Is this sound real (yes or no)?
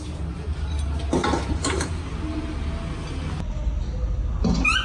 yes